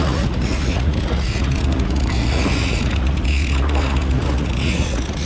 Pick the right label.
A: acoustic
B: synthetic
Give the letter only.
B